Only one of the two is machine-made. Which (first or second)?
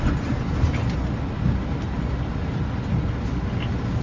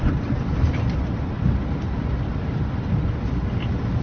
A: second